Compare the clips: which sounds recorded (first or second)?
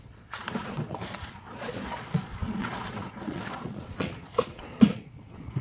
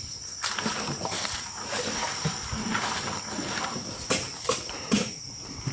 second